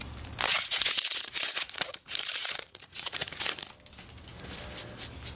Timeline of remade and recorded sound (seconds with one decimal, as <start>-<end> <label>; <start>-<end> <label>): 0.0-0.5 recorded; 0.5-3.7 remade; 3.7-5.4 recorded